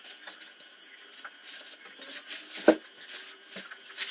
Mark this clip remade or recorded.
recorded